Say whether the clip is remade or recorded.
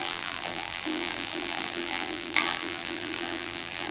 remade